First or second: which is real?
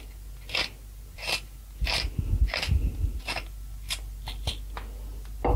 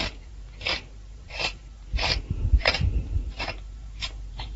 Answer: first